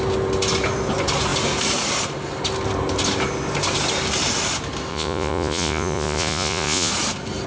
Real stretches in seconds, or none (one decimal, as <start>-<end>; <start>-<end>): 0.0-4.9; 6.9-7.5

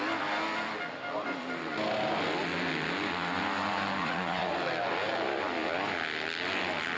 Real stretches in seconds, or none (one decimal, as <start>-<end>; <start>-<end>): 0.0-4.0; 4.5-7.0

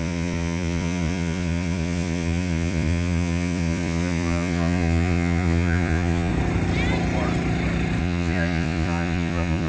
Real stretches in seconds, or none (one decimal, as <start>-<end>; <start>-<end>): 6.3-8.0

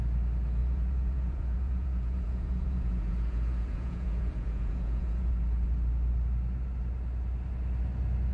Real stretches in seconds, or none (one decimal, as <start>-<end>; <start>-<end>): 0.0-0.6; 5.3-8.3

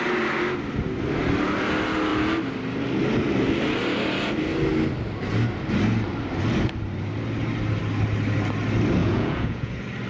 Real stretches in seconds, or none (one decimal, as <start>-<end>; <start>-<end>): 0.0-9.0; 9.7-10.1